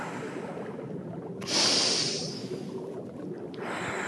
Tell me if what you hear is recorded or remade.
recorded